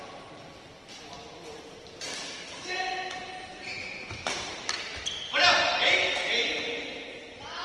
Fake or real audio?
real